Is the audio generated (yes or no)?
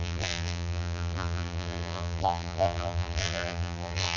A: yes